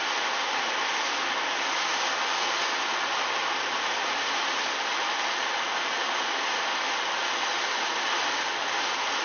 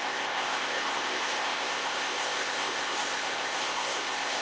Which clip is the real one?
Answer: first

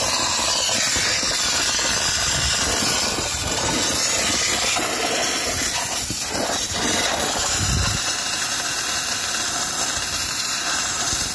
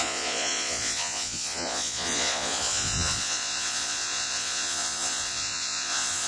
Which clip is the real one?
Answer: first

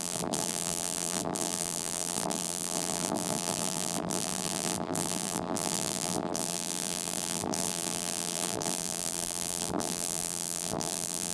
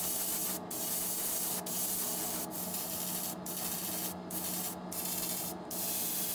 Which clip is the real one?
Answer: second